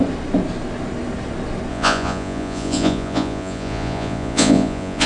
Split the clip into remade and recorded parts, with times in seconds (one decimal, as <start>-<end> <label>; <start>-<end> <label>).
0.0-1.7 recorded; 1.7-5.1 remade